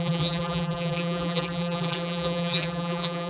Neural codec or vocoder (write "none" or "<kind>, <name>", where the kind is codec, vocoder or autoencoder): vocoder, BigVGAN v2